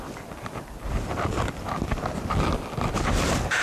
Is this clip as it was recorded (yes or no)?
yes